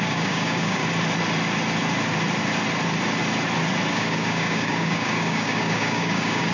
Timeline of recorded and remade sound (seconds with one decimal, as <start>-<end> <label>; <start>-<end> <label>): 0.0-0.8 remade; 0.8-3.9 recorded; 3.9-6.5 remade